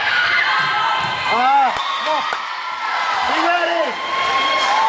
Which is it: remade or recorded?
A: recorded